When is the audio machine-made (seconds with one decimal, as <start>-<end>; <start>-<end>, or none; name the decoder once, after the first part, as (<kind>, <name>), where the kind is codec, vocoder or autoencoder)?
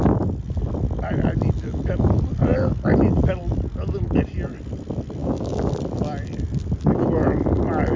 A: 5.2-5.7 (codec, DAC)